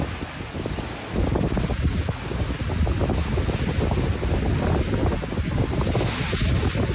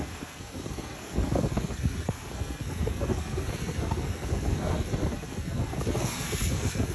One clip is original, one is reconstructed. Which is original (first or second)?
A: first